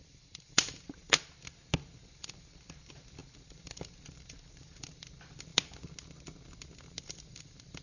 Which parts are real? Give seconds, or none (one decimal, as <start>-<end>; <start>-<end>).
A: 1.0-2.0; 5.5-7.0